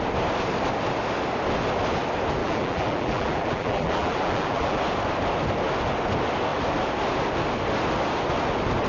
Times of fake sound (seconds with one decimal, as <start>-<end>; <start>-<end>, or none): 2.4-4.8